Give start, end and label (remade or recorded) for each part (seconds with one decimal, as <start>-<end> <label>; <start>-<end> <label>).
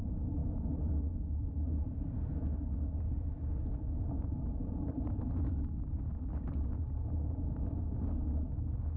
0.0-0.4 recorded; 0.4-5.6 remade; 5.6-9.0 recorded